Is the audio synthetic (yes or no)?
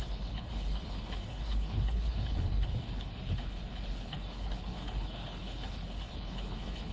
yes